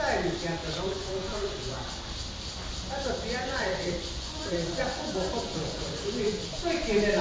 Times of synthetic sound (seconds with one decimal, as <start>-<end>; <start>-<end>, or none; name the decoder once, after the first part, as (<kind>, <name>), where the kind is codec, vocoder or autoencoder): 0.6-1.9 (vocoder, Vocos); 3.4-6.6